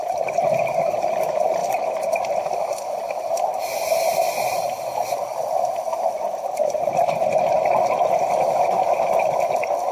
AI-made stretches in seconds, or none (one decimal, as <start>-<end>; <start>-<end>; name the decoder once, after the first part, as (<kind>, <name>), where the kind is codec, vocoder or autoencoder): none